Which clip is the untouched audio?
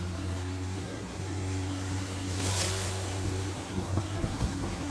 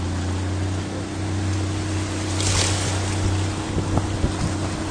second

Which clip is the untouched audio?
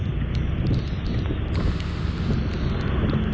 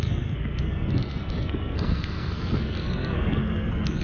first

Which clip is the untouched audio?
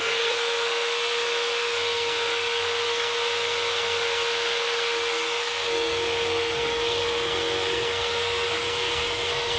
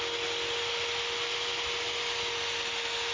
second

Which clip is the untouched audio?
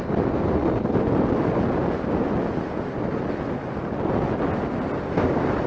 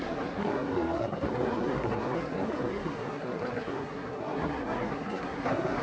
first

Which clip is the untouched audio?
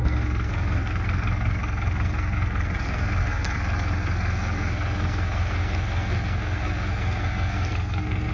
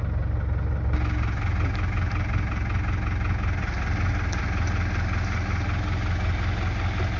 second